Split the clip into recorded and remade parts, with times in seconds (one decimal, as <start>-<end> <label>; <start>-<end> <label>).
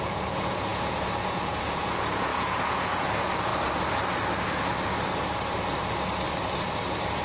0.0-3.5 remade; 3.5-7.2 recorded